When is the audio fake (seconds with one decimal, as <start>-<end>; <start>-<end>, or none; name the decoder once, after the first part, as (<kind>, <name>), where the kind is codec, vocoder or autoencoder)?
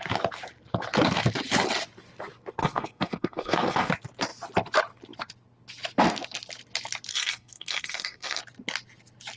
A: 2.6-3.9 (codec, SNAC); 7.1-8.4